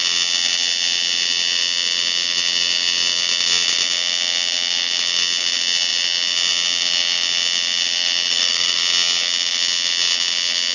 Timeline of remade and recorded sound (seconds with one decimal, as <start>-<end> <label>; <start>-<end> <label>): 0.0-8.3 recorded; 8.3-8.8 remade; 8.8-10.7 recorded